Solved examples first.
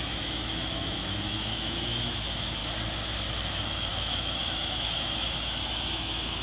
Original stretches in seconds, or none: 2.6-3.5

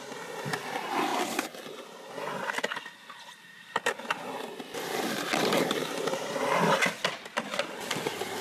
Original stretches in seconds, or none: 0.0-8.4

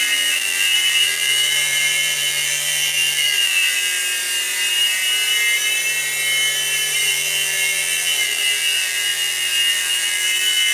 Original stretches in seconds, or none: 4.0-7.1

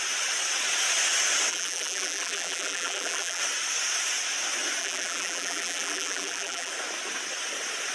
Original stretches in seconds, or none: 0.0-1.5; 3.4-4.8; 6.7-7.9

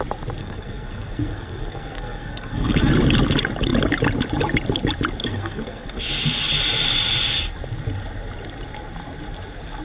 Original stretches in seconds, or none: 0.0-0.4; 2.9-5.2; 6.0-9.8

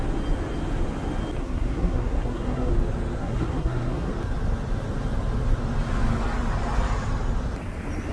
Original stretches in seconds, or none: 0.0-1.4; 2.7-3.2; 4.1-8.1

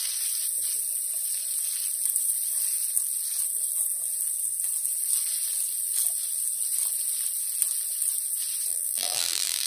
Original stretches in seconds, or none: 0.0-8.7